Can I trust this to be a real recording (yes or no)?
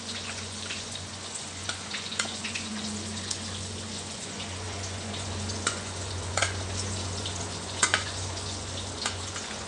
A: no